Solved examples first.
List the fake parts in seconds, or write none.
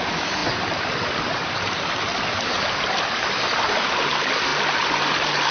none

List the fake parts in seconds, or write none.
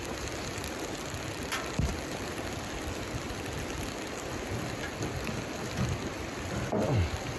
none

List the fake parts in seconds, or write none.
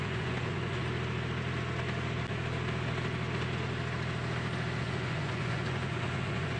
0.0-0.8 (vocoder, Vocos); 4.8-6.6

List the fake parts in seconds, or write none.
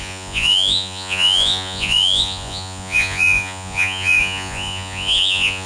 0.0-5.7 (vocoder, Vocos)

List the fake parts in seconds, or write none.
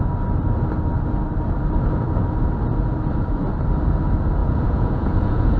4.4-5.6 (vocoder, Vocos)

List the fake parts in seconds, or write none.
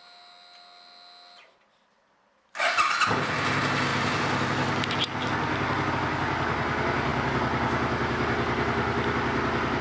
none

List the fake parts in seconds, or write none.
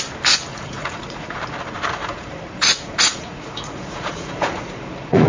0.5-1.4 (vocoder, Vocos); 2.0-5.3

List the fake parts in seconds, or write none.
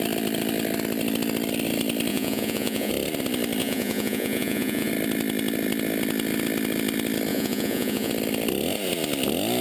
2.1-2.9 (vocoder, Vocos); 3.6-4.9; 7.3-8.1